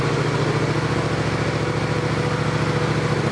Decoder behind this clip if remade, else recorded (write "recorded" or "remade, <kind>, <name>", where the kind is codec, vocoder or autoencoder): recorded